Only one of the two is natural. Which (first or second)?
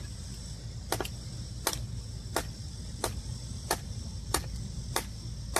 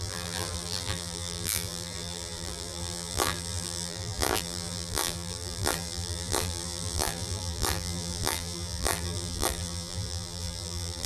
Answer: first